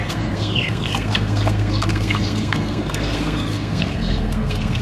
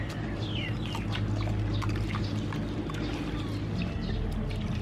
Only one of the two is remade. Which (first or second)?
first